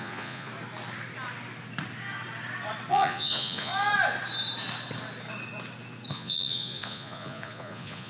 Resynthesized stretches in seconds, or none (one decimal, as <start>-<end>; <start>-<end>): 0.0-0.5; 2.9-3.7; 6.1-8.1